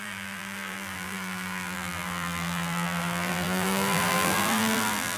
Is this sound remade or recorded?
remade